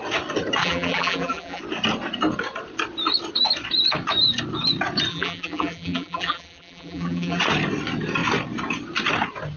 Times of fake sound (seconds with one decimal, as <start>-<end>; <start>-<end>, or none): 0.6-1.6; 5.1-7.4